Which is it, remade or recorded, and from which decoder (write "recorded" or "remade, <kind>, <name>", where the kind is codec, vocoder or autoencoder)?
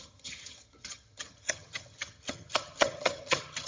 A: remade, vocoder, HiFi-GAN